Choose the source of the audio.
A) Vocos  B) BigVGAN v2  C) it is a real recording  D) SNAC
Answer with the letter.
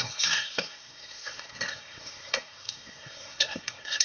D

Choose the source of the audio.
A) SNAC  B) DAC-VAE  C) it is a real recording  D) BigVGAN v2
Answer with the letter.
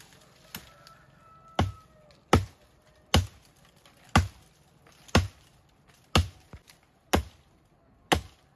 C